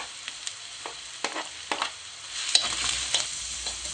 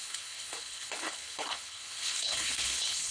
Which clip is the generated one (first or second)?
second